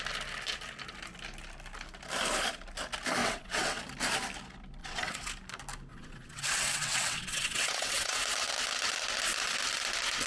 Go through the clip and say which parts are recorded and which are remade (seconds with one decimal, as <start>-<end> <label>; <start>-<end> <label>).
0.0-3.2 recorded; 3.2-3.8 remade; 3.8-4.8 recorded; 4.8-5.3 remade; 5.3-5.9 recorded; 5.9-8.2 remade; 8.2-10.3 recorded